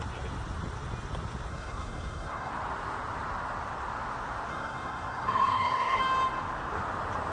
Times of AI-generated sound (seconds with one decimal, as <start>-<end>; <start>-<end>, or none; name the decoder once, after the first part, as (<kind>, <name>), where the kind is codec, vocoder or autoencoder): 1.5-2.5 (codec, SNAC); 4.5-6.0